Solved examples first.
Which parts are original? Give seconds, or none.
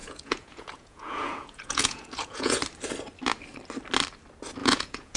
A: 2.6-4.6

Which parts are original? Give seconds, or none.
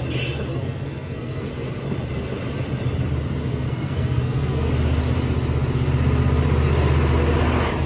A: 0.0-0.5; 1.5-3.5; 4.7-7.9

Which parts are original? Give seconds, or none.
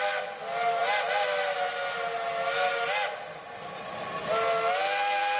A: 0.0-5.4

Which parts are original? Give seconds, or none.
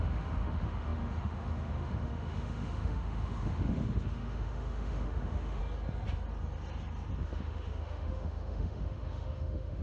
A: 5.6-7.2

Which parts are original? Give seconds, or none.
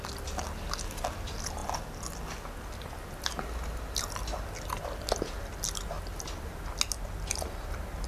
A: 0.0-8.1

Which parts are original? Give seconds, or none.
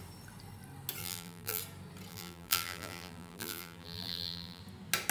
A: 0.0-1.0; 1.6-2.1; 4.6-5.1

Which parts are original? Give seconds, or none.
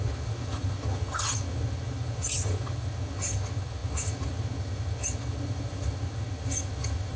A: none